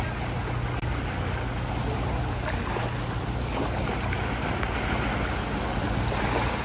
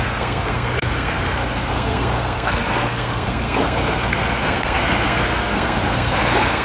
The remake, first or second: second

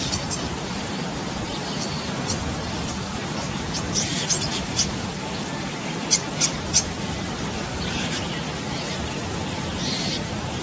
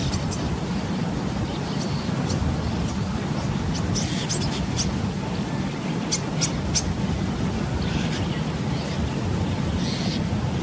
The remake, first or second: first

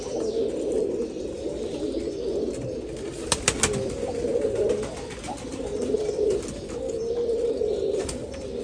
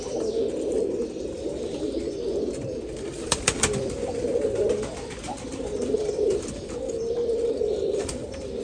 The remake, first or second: second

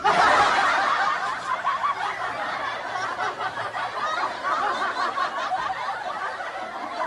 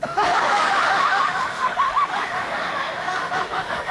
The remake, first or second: second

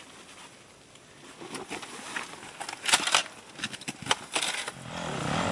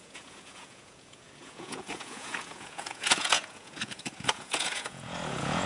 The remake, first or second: second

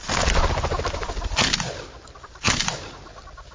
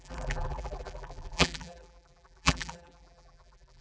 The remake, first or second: second